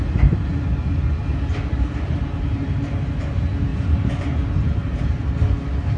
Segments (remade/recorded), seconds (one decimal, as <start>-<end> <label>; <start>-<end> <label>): 0.0-1.3 recorded; 1.3-3.1 remade; 3.1-3.7 recorded; 3.7-5.0 remade; 5.0-6.0 recorded

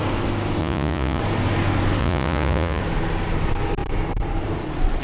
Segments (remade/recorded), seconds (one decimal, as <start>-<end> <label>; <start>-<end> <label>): 0.0-0.6 recorded; 0.6-1.2 remade; 1.2-2.0 recorded; 2.0-2.8 remade; 2.8-5.0 recorded

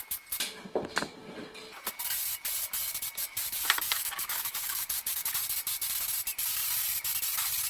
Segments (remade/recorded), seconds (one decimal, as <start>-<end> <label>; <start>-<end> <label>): 0.0-3.2 recorded; 3.2-5.3 remade; 5.3-7.7 recorded

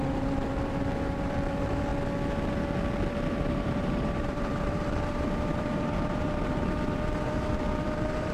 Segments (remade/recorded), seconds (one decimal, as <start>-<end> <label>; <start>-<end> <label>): 0.0-1.9 remade; 1.9-3.4 recorded; 3.4-8.3 remade

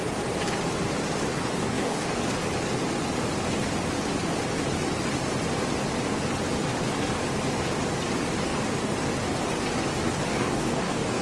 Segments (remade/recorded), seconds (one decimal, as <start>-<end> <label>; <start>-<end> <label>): 0.0-1.5 recorded; 1.5-2.2 remade; 2.2-10.3 recorded; 10.3-11.2 remade

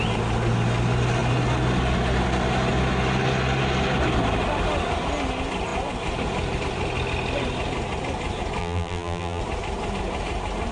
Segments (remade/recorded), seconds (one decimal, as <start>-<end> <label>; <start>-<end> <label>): 0.0-8.6 recorded; 8.6-9.4 remade; 9.4-10.7 recorded

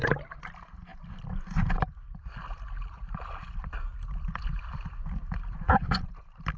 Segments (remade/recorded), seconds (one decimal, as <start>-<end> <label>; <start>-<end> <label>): 0.0-6.6 recorded

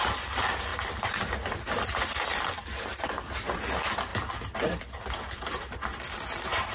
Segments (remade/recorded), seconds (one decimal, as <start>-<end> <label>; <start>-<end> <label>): 0.0-0.7 recorded; 0.7-2.8 remade; 2.8-6.7 recorded